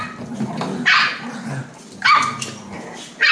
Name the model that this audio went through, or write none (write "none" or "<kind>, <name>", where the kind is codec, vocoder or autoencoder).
none